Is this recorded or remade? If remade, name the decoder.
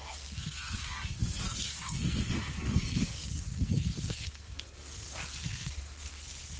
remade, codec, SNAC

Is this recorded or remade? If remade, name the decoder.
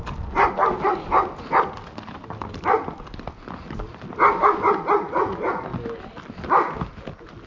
recorded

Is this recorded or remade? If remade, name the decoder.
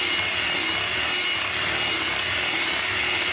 recorded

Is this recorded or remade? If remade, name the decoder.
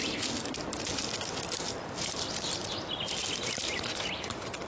recorded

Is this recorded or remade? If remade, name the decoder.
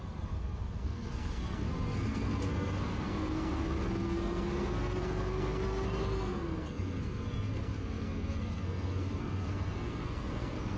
remade, codec, SNAC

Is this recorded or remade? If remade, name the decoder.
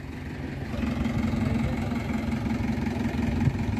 recorded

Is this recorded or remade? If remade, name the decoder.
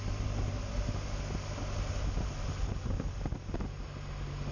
recorded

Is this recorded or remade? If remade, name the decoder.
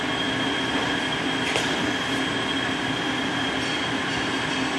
recorded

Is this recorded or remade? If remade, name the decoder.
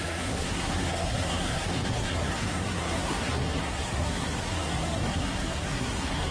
remade, codec, SNAC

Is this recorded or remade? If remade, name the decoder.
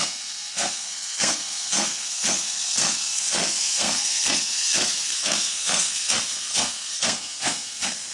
remade, codec, SNAC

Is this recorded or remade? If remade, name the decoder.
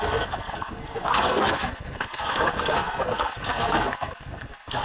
remade, codec, SNAC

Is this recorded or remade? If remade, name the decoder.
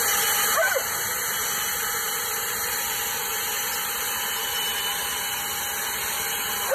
recorded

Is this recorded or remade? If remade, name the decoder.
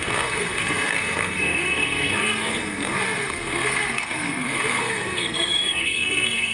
remade, codec, SNAC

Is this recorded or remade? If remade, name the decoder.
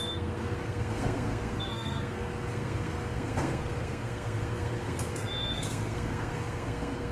remade, codec, SNAC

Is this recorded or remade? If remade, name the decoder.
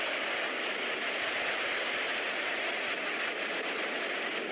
recorded